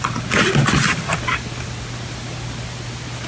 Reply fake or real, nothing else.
real